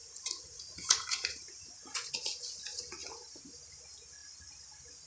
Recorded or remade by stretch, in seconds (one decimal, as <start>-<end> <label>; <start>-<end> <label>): 0.0-2.1 remade; 2.1-5.1 recorded